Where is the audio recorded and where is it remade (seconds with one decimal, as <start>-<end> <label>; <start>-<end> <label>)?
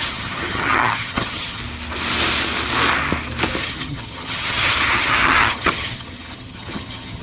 0.0-1.6 remade; 1.6-3.6 recorded; 3.6-7.2 remade